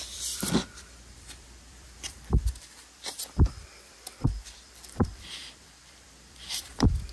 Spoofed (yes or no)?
yes